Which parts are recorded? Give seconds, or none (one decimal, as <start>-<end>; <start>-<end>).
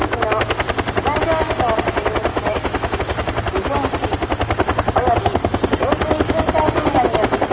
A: 0.0-2.3; 3.0-7.5